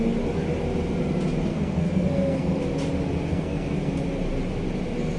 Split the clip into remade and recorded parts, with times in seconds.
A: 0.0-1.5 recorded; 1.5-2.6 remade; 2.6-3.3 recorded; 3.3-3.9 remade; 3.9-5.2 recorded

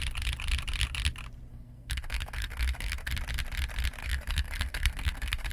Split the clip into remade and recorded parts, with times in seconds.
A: 0.0-1.5 recorded; 1.5-3.1 remade; 3.1-4.0 recorded; 4.0-5.5 remade

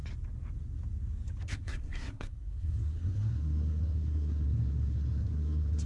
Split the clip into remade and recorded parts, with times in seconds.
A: 0.0-1.4 recorded; 1.4-5.9 remade

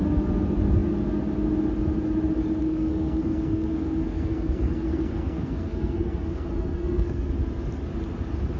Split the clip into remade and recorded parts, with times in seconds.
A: 0.0-2.6 recorded; 2.6-7.3 remade; 7.3-8.6 recorded

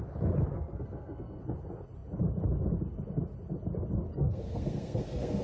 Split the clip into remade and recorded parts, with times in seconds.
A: 0.0-0.5 recorded; 0.5-1.4 remade; 1.4-4.1 recorded; 4.1-5.4 remade